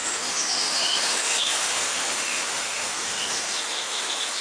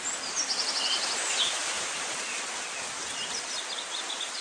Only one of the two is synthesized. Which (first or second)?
first